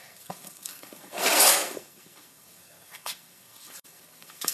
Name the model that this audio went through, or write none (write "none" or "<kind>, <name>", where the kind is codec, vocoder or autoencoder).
codec, SNAC